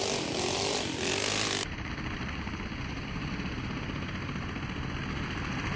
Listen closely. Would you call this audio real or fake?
real